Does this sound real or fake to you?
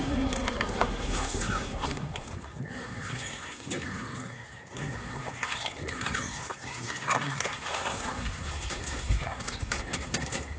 fake